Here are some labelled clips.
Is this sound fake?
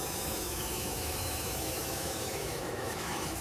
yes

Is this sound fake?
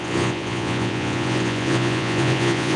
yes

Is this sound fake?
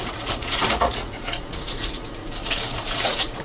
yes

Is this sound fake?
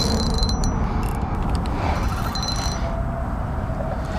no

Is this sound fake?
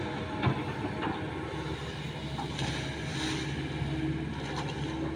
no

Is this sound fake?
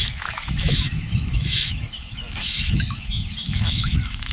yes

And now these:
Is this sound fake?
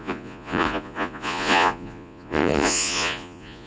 yes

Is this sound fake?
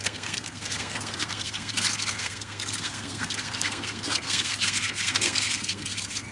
yes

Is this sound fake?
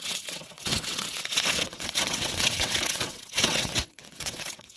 yes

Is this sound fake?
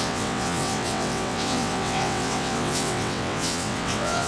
yes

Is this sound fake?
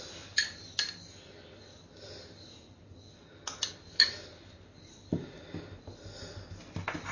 no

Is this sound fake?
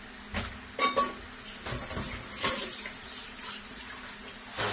no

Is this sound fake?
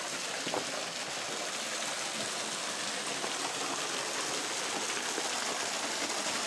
no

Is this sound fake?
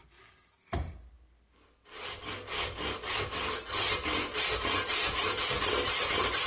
no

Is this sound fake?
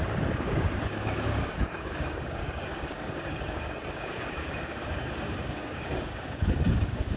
yes